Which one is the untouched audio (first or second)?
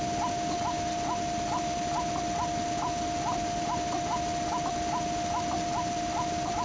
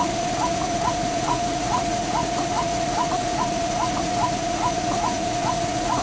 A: first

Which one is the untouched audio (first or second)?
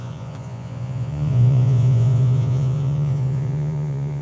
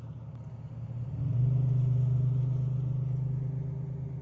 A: second